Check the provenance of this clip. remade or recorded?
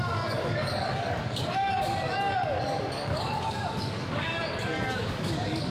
remade